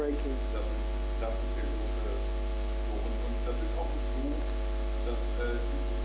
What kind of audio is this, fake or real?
real